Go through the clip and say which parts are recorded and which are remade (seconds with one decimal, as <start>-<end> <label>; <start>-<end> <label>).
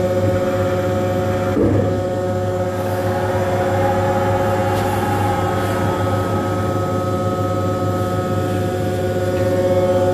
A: 0.0-1.6 recorded; 1.6-3.3 remade; 3.3-10.1 recorded